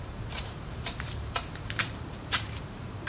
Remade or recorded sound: remade